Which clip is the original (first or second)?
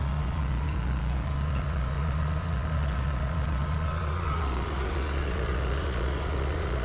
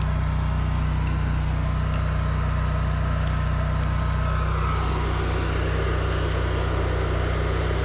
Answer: second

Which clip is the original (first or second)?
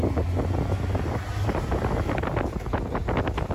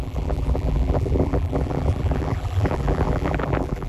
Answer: first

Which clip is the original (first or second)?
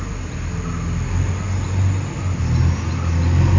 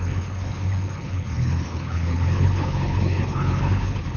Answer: first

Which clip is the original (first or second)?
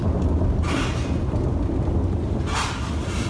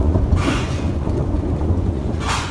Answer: first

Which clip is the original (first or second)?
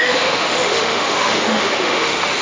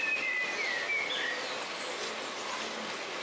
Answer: second